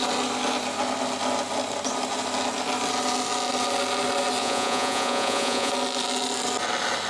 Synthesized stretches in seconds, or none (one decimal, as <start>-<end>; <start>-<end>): 4.4-5.7